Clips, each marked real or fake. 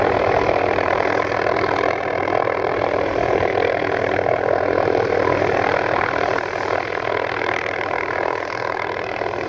fake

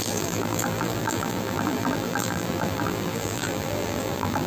fake